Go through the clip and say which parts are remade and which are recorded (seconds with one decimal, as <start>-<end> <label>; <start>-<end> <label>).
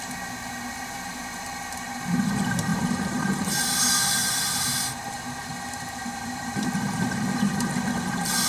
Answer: 0.0-2.7 recorded; 2.7-3.8 remade; 3.8-4.2 recorded; 4.2-8.5 remade